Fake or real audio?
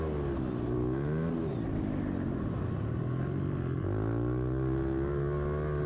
real